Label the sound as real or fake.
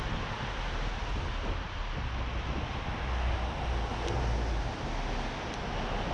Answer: real